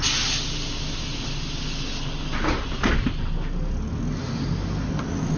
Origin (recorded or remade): recorded